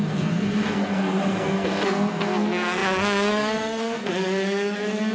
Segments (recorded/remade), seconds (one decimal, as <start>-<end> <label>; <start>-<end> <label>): 0.0-5.1 remade